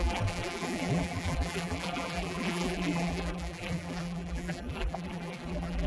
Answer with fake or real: fake